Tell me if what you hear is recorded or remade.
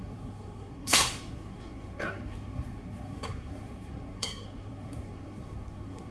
remade